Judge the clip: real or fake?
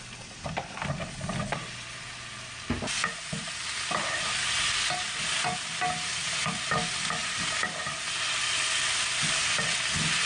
real